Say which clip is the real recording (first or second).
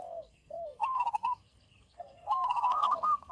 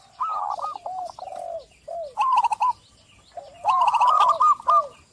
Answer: second